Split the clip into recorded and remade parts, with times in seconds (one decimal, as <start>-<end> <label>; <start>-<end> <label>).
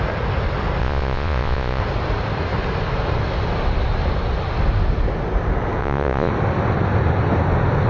0.0-0.8 recorded; 0.8-1.8 remade; 1.8-5.8 recorded; 5.8-6.3 remade; 6.3-7.9 recorded